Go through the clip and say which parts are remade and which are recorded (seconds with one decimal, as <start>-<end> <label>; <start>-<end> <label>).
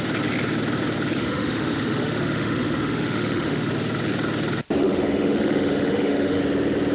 0.0-1.2 recorded; 1.2-3.7 remade; 3.7-4.8 recorded; 4.8-6.4 remade; 6.4-6.9 recorded